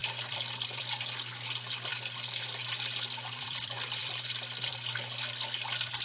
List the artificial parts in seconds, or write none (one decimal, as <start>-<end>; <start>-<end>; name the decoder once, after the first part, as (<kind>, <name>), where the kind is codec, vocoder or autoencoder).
0.0-0.8 (vocoder, BigVGAN v2); 1.9-4.7